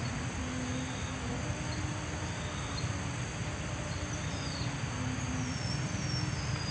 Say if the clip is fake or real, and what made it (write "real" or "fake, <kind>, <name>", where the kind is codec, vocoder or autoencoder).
real